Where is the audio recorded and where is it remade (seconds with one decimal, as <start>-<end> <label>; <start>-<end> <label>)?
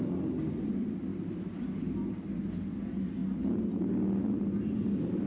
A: 0.0-5.3 recorded